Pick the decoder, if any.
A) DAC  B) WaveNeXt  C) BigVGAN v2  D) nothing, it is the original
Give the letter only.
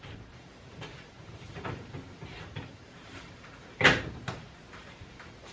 C